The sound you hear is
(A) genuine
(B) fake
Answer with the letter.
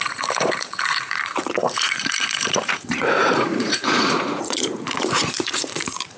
B